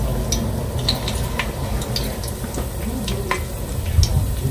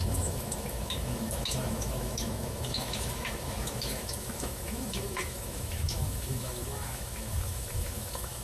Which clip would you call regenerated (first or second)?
second